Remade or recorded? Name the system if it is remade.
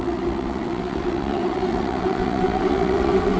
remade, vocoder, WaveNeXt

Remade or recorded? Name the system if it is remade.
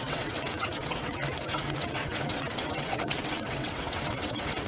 remade, vocoder, WaveNeXt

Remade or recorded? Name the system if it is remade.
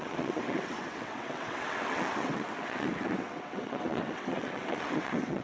remade, vocoder, WaveNeXt